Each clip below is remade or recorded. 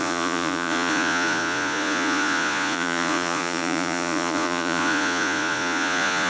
remade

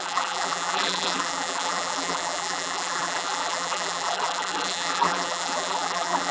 remade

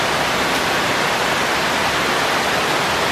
recorded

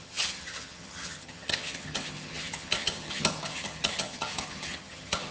remade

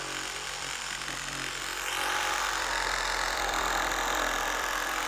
remade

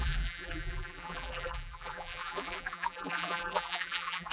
remade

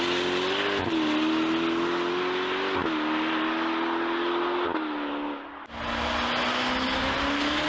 recorded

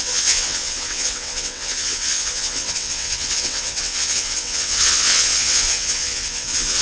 remade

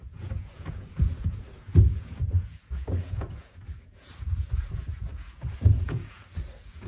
remade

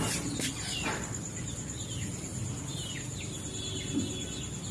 recorded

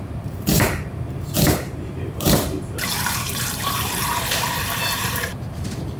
remade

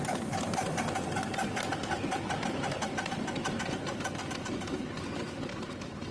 recorded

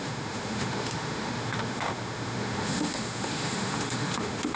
remade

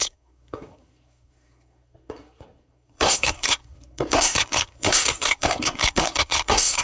remade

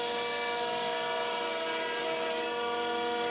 recorded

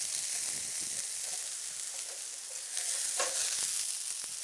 recorded